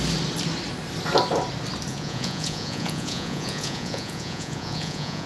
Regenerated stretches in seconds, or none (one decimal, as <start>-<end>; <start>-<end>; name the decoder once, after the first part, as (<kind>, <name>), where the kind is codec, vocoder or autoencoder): 1.9-5.3 (vocoder, Vocos)